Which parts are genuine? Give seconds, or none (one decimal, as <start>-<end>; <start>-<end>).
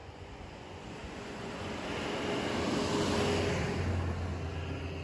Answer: 1.7-5.0